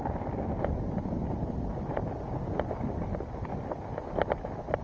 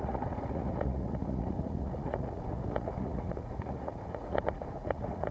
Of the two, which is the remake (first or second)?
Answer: second